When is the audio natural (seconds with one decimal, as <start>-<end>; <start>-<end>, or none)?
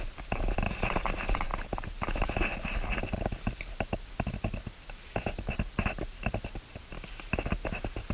0.0-8.1